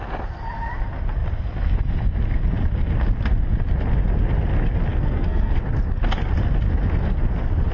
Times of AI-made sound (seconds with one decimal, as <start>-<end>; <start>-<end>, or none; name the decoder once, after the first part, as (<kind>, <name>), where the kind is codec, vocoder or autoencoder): 4.9-5.5 (codec, SNAC)